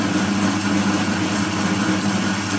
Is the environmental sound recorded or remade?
recorded